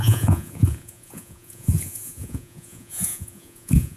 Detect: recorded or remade remade